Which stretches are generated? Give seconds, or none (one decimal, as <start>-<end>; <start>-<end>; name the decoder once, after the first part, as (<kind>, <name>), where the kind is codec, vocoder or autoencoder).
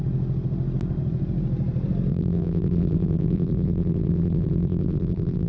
2.1-5.5 (vocoder, BigVGAN v2)